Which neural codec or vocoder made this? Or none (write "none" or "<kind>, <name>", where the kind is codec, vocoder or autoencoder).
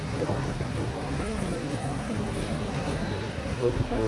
codec, SNAC